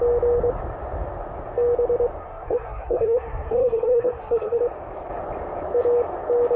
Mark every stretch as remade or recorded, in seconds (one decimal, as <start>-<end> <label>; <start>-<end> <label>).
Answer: 0.0-2.2 recorded; 2.2-4.6 remade; 4.6-6.6 recorded